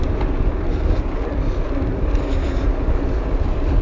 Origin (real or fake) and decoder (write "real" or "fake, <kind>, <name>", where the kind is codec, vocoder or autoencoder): real